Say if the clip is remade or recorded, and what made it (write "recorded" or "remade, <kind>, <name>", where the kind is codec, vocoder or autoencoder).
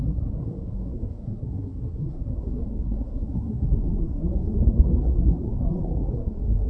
remade, codec, SNAC